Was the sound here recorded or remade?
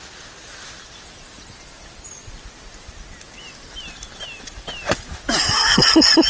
recorded